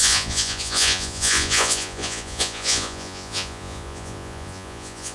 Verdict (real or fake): fake